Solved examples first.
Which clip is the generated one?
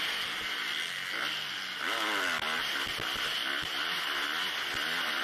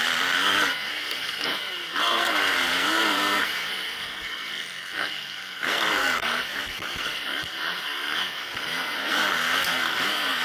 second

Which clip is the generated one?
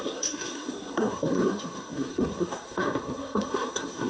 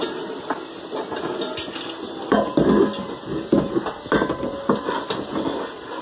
first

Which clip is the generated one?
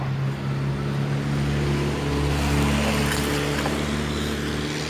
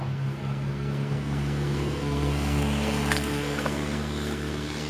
second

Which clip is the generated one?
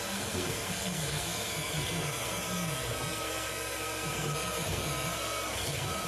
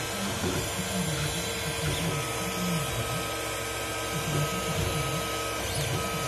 first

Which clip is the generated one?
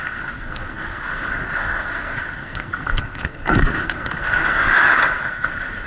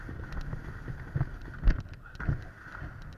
first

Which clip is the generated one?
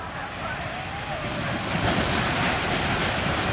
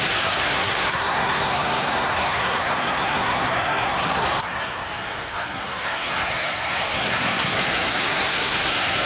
second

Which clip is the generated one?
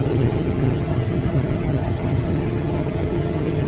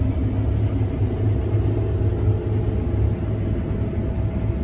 first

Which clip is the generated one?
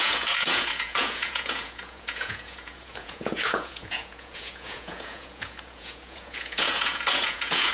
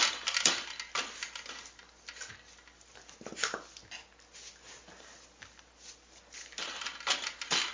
first